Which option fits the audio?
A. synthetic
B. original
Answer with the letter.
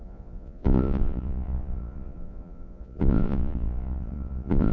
A